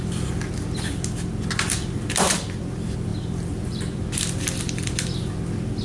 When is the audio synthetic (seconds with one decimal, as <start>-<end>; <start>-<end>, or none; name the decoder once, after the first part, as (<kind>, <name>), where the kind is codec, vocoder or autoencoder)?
none